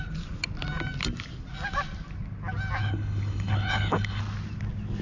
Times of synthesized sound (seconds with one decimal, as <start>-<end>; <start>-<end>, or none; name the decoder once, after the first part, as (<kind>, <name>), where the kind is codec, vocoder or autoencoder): 2.8-4.2 (codec, HILCodec)